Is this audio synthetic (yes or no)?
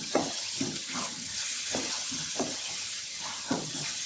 yes